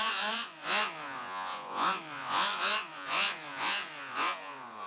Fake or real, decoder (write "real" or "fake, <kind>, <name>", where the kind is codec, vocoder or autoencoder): fake, vocoder, Vocos